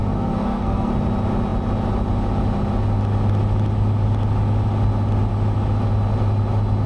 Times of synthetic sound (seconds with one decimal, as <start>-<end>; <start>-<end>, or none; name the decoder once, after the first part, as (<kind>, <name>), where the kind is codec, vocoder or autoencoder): 0.0-0.9 (codec, SNAC)